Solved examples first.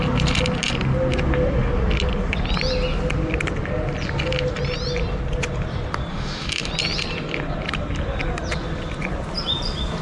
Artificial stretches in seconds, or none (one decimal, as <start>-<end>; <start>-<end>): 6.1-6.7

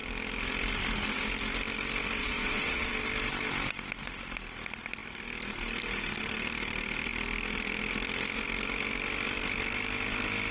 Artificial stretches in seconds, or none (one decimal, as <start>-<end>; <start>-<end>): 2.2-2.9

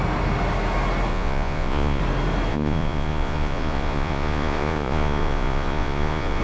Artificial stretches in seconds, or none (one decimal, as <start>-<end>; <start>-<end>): 1.1-2.0; 2.5-6.4